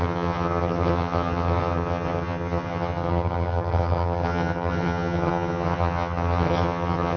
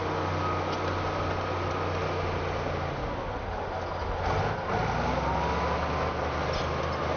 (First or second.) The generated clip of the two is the first